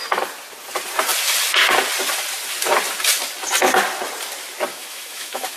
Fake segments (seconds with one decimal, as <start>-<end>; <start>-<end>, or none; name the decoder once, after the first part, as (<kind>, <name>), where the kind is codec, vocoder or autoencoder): 4.7-5.6 (autoencoder, DAC-VAE)